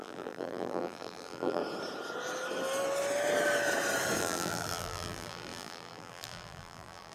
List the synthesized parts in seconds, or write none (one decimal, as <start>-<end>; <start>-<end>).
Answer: 0.0-1.6; 4.2-7.1